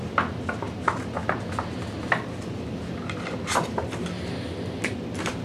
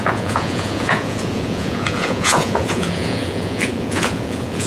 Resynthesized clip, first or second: second